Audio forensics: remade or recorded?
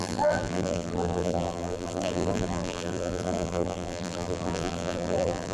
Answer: remade